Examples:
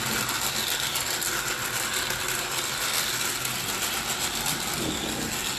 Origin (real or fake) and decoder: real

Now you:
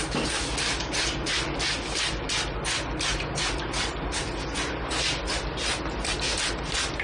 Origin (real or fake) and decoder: real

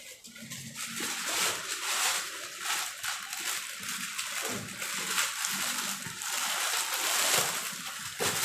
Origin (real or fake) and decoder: real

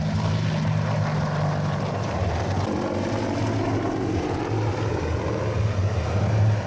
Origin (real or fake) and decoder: real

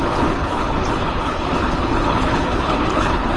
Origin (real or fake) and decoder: fake, codec, HILCodec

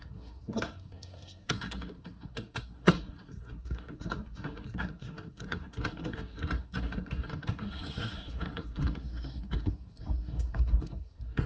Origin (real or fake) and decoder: fake, codec, SNAC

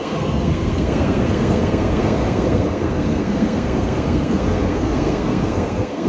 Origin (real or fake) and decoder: fake, codec, SNAC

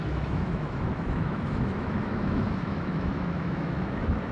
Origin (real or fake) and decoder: fake, autoencoder, DAC-VAE